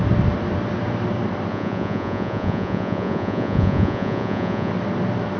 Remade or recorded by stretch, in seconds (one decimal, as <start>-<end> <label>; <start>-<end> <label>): 0.0-1.5 recorded; 1.5-4.7 remade; 4.7-5.4 recorded